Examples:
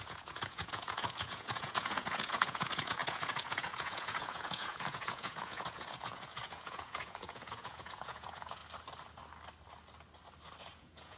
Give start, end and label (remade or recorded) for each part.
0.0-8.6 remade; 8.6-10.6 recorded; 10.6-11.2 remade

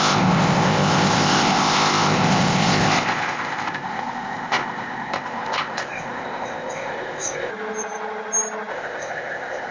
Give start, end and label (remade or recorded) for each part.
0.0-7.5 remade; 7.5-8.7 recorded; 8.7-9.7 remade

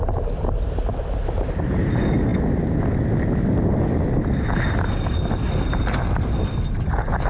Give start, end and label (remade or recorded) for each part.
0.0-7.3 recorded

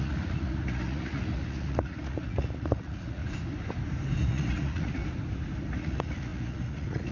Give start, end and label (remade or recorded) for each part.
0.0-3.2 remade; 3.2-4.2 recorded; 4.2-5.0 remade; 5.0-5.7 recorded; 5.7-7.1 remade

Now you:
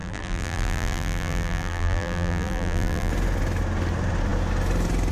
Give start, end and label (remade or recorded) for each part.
0.0-3.1 remade; 3.1-5.1 recorded